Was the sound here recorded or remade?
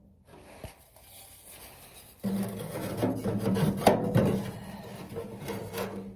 recorded